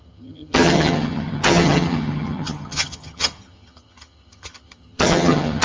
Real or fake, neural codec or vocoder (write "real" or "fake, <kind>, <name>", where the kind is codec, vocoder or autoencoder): fake, vocoder, HiFi-GAN